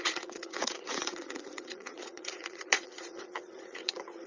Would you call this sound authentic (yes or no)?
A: no